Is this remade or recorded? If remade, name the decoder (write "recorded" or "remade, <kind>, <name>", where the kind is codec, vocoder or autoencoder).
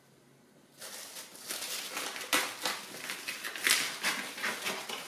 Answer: recorded